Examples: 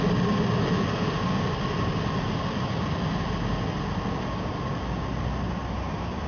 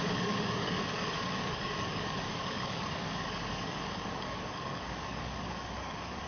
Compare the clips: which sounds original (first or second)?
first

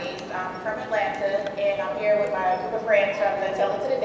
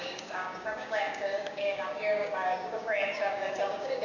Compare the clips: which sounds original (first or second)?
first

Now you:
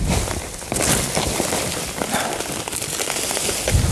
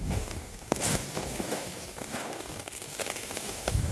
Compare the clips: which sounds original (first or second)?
first